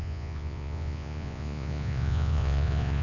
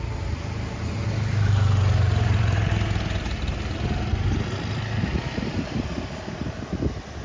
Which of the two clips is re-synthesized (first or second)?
first